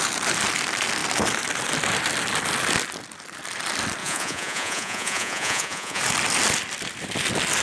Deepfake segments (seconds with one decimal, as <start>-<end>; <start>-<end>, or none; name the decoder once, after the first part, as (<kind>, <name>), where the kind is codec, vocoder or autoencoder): 4.0-6.0 (vocoder, Vocos)